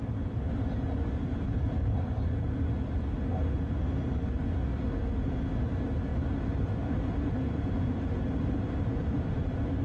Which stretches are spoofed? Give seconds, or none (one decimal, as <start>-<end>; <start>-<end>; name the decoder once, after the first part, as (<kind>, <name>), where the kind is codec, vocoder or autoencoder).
1.3-2.2 (vocoder, BigVGAN v2); 6.1-9.8